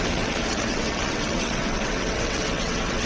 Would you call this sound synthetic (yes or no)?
yes